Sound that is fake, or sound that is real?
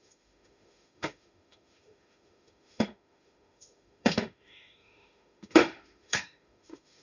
fake